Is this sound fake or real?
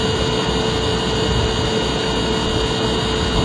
real